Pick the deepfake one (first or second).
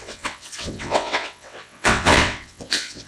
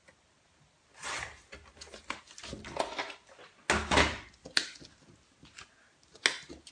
first